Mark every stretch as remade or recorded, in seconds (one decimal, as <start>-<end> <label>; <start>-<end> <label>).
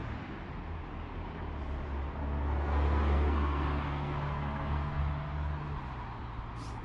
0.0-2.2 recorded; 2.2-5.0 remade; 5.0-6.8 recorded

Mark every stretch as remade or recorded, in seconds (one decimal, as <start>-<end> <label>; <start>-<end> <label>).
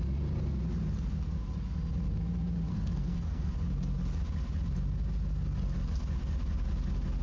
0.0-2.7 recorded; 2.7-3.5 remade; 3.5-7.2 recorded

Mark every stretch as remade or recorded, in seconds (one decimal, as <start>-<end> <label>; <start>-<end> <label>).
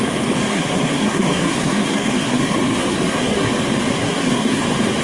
0.0-0.5 recorded; 0.5-3.5 remade; 3.5-3.9 recorded; 3.9-4.6 remade; 4.6-5.0 recorded